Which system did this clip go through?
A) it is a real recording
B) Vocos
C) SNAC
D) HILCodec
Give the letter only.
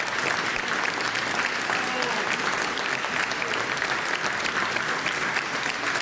A